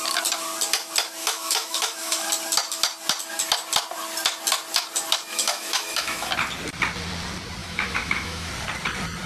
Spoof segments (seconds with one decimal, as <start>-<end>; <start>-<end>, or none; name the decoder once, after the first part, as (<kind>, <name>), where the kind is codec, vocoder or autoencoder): 1.2-2.3 (autoencoder, DAC-VAE); 5.3-6.3; 7.6-8.5